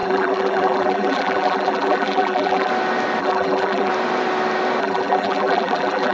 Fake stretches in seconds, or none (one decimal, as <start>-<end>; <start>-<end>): 0.0-2.7; 3.2-3.9; 4.8-6.1